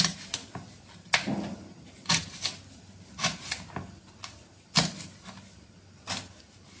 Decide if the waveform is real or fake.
real